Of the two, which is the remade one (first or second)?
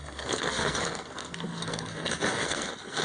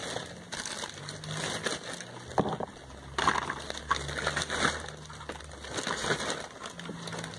first